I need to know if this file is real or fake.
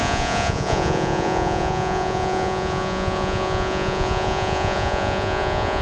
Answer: fake